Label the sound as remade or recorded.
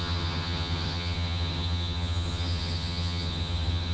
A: remade